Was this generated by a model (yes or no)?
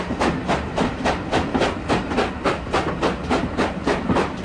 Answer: no